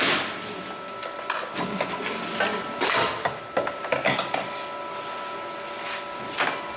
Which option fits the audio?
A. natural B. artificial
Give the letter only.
A